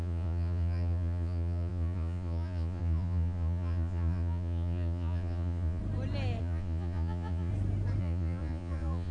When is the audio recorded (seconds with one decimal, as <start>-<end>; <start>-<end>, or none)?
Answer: 5.8-6.4; 7.5-8.0